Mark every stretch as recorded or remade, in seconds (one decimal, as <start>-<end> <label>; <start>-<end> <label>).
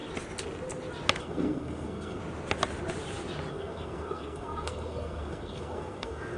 0.0-1.2 recorded; 1.2-2.2 remade; 2.2-3.5 recorded; 3.5-6.4 remade